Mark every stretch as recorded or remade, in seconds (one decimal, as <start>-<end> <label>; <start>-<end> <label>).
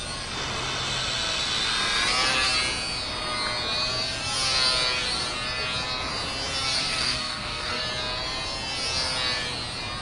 0.0-6.8 recorded; 6.8-7.8 remade; 7.8-10.0 recorded